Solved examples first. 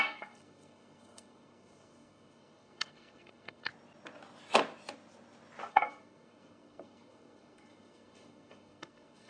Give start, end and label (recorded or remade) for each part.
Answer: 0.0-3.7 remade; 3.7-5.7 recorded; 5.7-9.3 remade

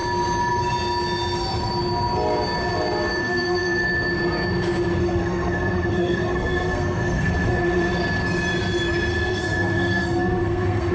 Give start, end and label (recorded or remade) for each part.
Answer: 0.0-3.2 recorded; 3.2-3.8 remade; 3.8-5.0 recorded; 5.0-7.9 remade; 7.9-9.1 recorded; 9.1-10.9 remade

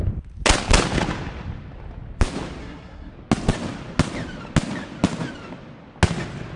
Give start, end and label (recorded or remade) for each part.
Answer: 0.0-2.6 recorded; 2.6-3.1 remade; 3.1-6.6 recorded

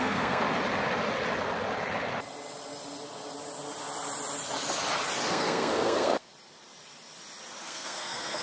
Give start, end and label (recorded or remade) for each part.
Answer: 0.0-0.4 remade; 0.4-5.3 recorded; 5.3-6.3 remade; 6.3-7.6 recorded; 7.6-8.4 remade

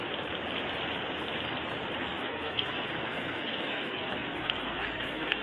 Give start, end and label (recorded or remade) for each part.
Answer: 0.0-2.1 recorded; 2.1-5.4 remade